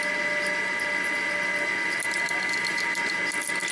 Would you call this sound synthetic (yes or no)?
no